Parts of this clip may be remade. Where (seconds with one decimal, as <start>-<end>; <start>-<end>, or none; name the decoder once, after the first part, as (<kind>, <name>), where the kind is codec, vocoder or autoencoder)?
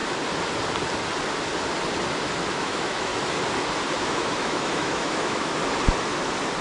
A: 2.5-3.1 (autoencoder, DAC-VAE); 4.0-5.6